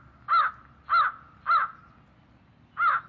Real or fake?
real